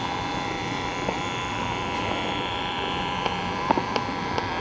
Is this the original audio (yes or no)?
yes